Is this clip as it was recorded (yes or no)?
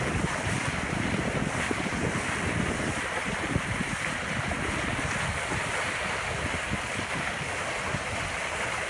no